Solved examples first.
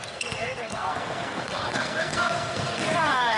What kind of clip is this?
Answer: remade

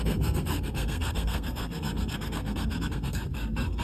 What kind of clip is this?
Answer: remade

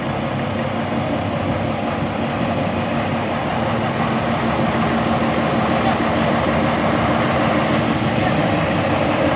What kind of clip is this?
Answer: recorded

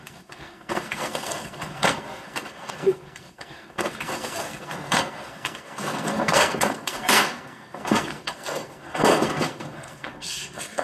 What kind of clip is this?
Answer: remade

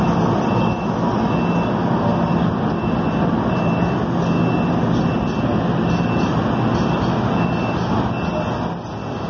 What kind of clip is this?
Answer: recorded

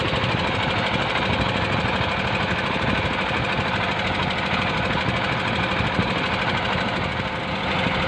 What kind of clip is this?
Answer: recorded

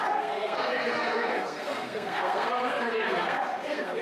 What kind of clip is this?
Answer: remade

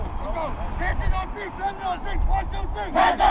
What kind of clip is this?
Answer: recorded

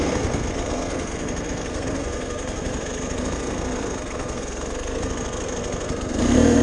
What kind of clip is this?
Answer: remade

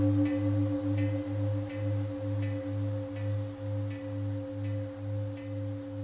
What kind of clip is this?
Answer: recorded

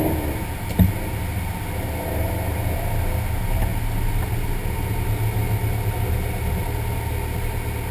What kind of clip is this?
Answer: recorded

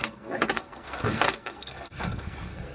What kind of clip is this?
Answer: remade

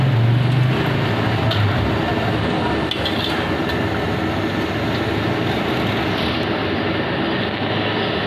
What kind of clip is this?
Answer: recorded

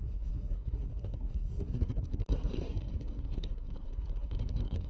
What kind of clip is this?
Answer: remade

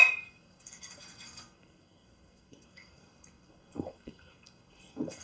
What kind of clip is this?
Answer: remade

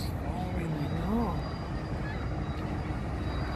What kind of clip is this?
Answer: recorded